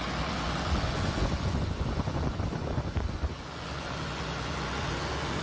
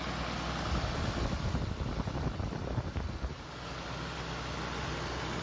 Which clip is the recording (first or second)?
second